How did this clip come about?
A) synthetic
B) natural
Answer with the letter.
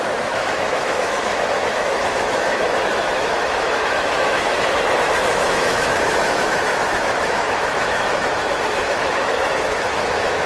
A